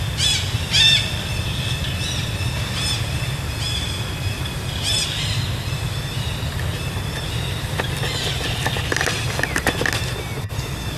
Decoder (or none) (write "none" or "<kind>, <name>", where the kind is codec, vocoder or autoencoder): none